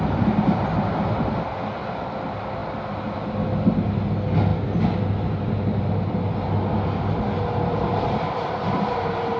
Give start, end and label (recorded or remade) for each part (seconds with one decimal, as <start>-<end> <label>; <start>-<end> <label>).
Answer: 0.0-9.4 recorded

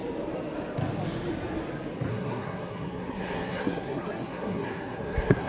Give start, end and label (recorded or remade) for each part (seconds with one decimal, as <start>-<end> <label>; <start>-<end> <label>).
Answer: 0.0-2.1 recorded; 2.1-5.5 remade

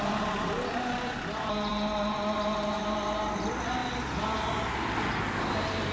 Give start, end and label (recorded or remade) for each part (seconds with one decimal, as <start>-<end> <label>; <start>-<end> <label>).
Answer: 0.0-5.9 recorded

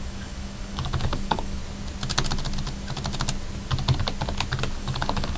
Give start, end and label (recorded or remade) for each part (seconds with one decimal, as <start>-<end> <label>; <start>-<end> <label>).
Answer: 0.0-1.6 remade; 1.6-4.8 recorded; 4.8-5.4 remade